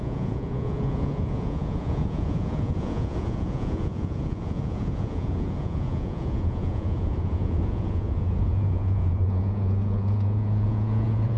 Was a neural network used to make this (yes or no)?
yes